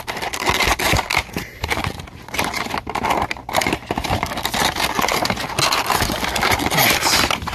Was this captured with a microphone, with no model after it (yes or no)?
yes